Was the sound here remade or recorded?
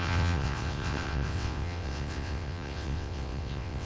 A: remade